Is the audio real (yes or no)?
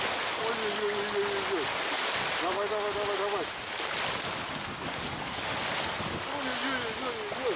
yes